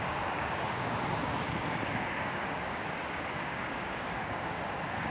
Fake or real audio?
fake